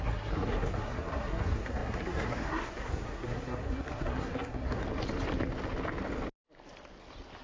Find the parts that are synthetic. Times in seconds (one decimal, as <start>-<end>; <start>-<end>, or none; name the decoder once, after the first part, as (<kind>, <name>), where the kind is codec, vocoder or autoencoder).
0.0-4.8 (codec, SNAC)